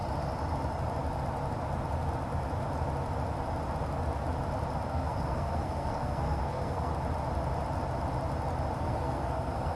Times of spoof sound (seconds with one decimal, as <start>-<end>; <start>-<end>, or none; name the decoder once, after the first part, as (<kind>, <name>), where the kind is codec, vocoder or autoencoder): 4.9-6.9 (codec, SNAC); 8.8-9.7